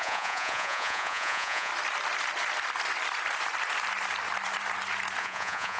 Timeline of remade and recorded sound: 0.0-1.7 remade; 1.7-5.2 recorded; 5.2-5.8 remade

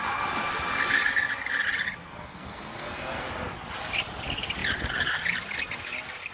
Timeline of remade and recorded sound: 0.0-2.0 recorded; 2.0-3.3 remade; 3.3-6.3 recorded

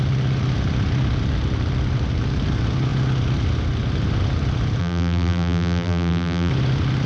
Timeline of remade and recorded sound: 0.0-4.8 recorded; 4.8-6.5 remade; 6.5-7.1 recorded

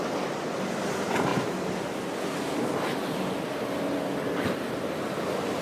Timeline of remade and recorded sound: 0.0-5.6 recorded

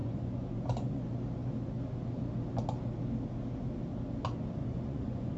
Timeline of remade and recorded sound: 0.0-1.0 remade; 1.0-4.6 recorded; 4.6-5.4 remade